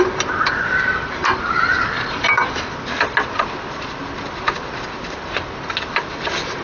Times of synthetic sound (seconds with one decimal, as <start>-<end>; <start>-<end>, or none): none